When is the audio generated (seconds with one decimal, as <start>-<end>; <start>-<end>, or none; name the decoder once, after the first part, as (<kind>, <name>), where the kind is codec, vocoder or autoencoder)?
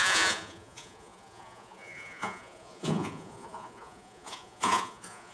0.0-5.3 (vocoder, Vocos)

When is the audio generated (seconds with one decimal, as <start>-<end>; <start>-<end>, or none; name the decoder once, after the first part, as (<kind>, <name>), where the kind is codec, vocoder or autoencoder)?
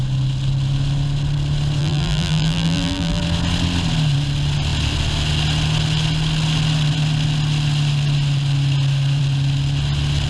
1.8-3.2 (vocoder, BigVGAN v2)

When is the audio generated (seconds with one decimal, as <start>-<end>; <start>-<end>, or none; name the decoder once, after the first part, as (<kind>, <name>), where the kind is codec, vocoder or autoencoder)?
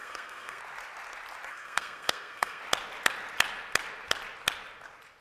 0.0-0.6 (codec, SNAC); 1.5-2.6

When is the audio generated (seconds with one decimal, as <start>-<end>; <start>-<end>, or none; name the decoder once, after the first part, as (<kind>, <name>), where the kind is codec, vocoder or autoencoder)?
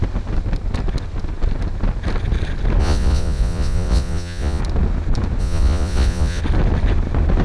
2.8-4.6 (vocoder, Vocos); 5.4-6.4